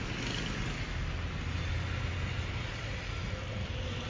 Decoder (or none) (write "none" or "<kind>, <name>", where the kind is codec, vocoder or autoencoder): none